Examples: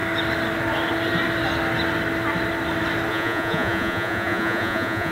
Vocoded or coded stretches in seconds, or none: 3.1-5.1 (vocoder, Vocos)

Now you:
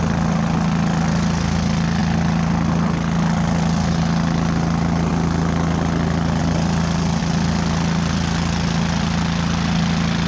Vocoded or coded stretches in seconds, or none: none

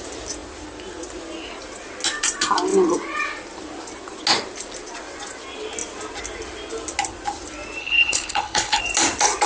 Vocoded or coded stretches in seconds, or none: 7.8-8.8 (codec, HILCodec)